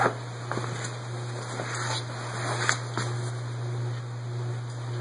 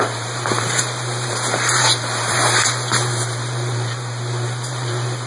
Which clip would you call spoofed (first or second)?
second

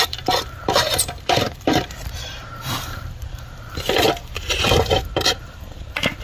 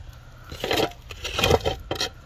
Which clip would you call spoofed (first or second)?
first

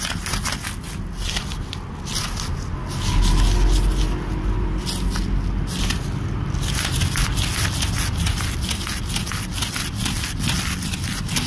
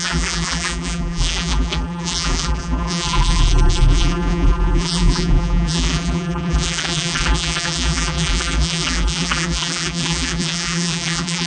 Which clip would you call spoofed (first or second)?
second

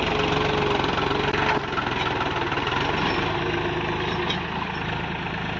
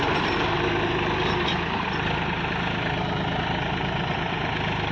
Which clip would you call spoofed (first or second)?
second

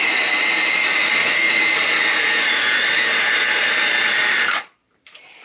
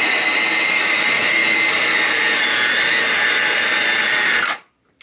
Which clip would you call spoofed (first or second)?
first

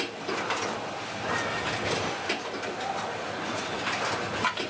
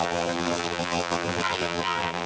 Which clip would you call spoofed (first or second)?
second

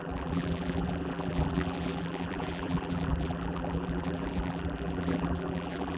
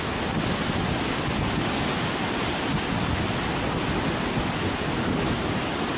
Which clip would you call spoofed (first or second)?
first